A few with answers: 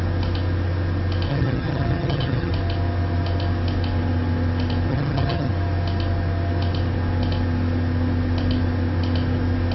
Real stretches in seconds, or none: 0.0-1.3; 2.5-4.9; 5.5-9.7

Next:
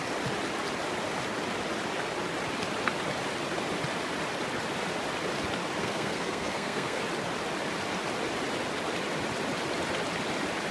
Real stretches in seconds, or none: 0.0-5.8; 7.0-10.7

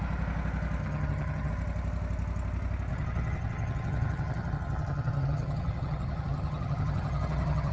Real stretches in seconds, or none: 0.0-0.8; 1.5-2.9

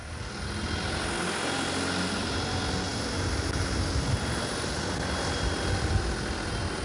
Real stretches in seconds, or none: 0.0-6.8